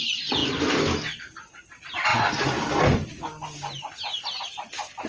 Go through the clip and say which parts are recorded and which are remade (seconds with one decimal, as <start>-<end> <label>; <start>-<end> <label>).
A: 0.0-5.1 recorded